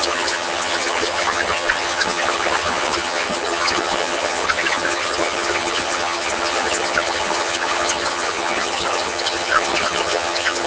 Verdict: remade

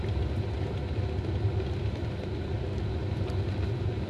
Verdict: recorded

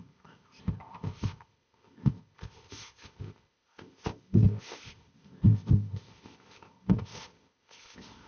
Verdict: remade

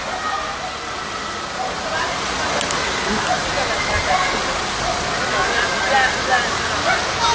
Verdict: recorded